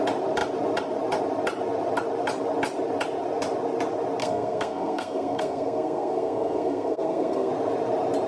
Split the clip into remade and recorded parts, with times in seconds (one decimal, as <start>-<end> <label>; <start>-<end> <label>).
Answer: 0.0-4.2 recorded; 4.2-7.5 remade; 7.5-8.3 recorded